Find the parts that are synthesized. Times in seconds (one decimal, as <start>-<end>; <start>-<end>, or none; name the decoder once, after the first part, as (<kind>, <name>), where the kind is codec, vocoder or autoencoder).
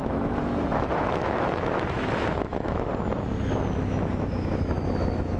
0.0-2.9 (autoencoder, DAC-VAE); 3.8-5.4